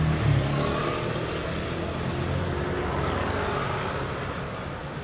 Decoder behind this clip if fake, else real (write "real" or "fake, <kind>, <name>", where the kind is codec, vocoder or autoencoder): real